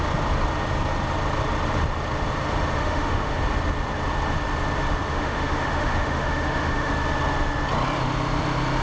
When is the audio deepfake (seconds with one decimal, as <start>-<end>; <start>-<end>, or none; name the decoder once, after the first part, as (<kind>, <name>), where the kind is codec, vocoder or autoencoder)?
2.8-3.4 (autoencoder, DAC-VAE); 5.1-6.9